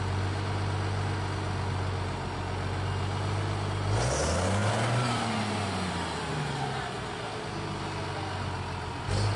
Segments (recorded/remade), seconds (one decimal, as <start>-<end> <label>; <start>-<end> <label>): 0.0-9.4 recorded

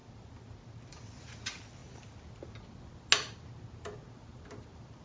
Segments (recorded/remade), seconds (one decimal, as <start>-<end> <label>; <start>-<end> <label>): 0.0-5.0 recorded

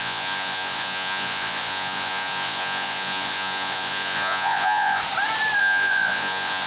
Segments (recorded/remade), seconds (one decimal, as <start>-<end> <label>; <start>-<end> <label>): 0.0-5.0 remade; 5.0-5.6 recorded; 5.6-6.7 remade

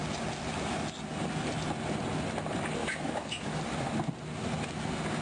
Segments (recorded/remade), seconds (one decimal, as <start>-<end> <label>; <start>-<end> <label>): 0.0-2.8 recorded; 2.8-3.6 remade; 3.6-5.2 recorded

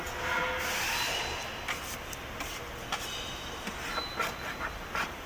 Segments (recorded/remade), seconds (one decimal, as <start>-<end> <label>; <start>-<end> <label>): 0.0-0.4 remade; 0.4-3.6 recorded; 3.6-5.3 remade

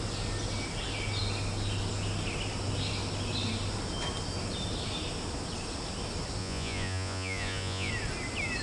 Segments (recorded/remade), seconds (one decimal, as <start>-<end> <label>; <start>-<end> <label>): 0.0-6.4 recorded; 6.4-7.9 remade; 7.9-8.6 recorded

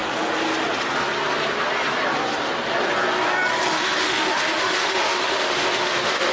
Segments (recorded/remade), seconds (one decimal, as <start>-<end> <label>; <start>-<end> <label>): 0.0-3.7 recorded; 3.7-6.3 remade

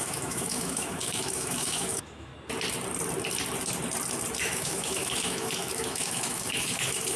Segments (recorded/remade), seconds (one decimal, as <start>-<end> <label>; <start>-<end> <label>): 0.0-2.3 remade; 2.3-4.4 recorded; 4.4-7.2 remade